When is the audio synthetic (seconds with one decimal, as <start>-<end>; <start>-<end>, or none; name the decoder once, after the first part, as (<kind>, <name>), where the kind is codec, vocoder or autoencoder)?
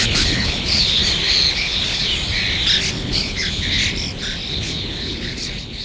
0.0-1.0 (codec, HILCodec); 1.5-2.1; 2.9-3.8; 4.5-5.8